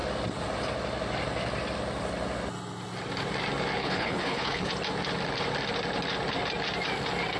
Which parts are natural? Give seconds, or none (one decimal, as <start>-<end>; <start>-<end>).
0.0-3.8; 4.7-7.4